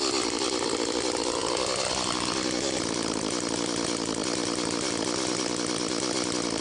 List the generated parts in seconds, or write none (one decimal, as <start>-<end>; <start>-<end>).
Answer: 0.0-6.6